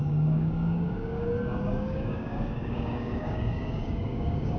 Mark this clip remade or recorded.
remade